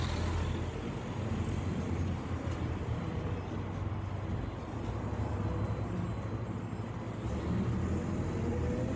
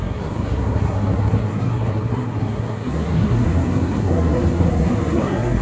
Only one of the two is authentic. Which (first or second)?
first